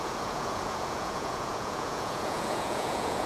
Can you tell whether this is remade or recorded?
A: remade